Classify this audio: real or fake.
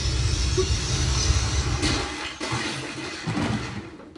real